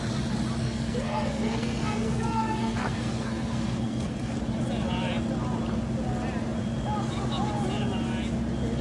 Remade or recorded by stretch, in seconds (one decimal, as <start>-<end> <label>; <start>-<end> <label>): 0.0-0.6 recorded; 0.6-4.3 remade; 4.3-8.8 recorded